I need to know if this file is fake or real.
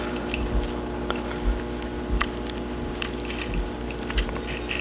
real